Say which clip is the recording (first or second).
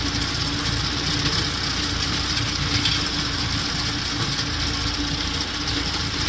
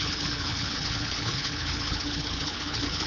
first